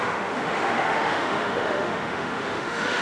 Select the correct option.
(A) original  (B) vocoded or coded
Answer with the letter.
B